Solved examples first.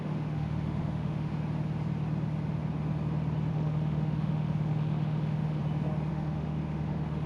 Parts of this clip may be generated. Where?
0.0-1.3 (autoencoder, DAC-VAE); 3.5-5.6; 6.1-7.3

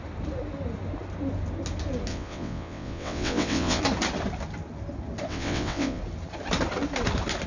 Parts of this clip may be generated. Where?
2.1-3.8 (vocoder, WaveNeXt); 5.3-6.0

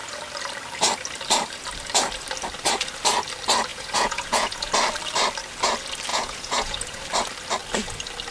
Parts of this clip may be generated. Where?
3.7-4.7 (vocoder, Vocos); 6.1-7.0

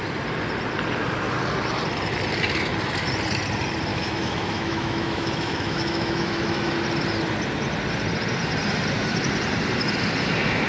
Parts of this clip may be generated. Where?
3.9-6.7 (autoencoder, DAC-VAE)

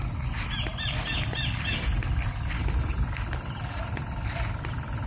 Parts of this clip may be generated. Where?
none

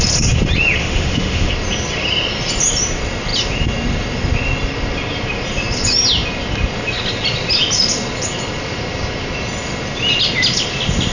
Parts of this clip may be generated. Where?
0.8-1.5 (autoencoder, DAC-VAE)